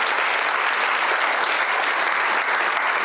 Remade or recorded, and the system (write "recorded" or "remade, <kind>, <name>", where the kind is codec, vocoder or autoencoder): recorded